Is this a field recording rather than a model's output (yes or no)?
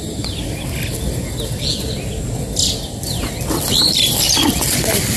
yes